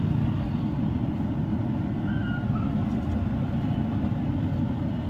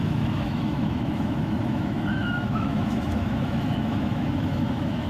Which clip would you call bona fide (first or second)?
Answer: first